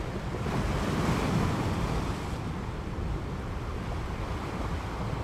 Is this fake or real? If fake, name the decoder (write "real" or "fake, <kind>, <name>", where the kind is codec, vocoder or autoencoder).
real